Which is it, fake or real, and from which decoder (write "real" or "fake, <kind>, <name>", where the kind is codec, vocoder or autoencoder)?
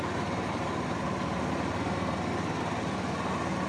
real